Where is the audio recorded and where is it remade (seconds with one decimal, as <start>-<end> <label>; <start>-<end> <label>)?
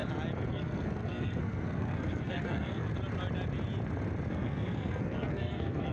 0.0-0.5 recorded; 0.5-2.9 remade; 2.9-4.3 recorded; 4.3-5.9 remade